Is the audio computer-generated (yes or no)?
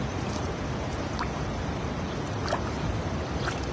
no